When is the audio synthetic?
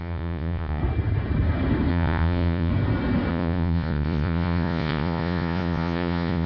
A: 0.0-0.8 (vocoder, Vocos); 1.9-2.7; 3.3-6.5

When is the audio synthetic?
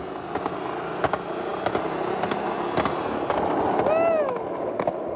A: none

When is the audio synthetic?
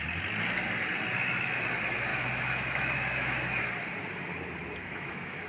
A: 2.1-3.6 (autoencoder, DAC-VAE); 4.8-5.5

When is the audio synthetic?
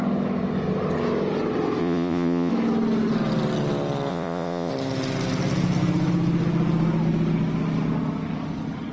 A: 1.8-2.5 (vocoder, Vocos); 4.1-4.7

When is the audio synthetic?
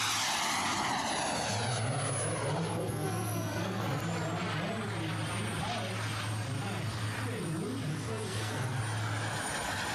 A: 2.7-3.8 (codec, SNAC); 7.9-8.8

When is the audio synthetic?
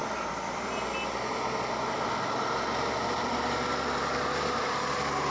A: none